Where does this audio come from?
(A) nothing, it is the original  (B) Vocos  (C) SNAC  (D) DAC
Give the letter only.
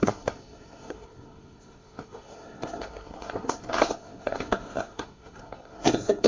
C